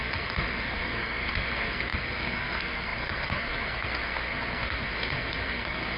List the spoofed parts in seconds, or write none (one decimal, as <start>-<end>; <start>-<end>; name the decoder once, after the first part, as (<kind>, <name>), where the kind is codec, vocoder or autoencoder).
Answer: 0.0-6.0 (codec, SNAC)